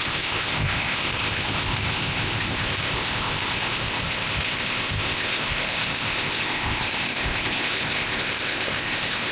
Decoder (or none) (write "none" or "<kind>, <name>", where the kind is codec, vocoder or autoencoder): codec, ZipCodec